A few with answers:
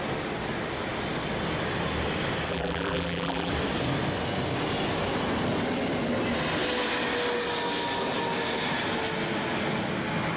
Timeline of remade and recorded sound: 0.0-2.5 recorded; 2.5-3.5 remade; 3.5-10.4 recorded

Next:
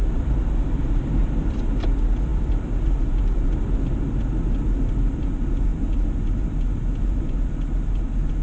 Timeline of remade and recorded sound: 0.0-1.2 recorded; 1.2-1.9 remade; 1.9-2.3 recorded; 2.3-2.9 remade; 2.9-8.4 recorded

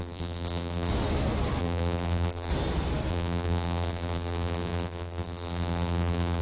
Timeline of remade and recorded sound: 0.0-0.9 remade; 0.9-1.6 recorded; 1.6-2.5 remade; 2.5-3.1 recorded; 3.1-6.4 remade

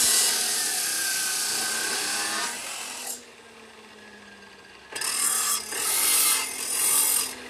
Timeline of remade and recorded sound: 0.0-7.5 recorded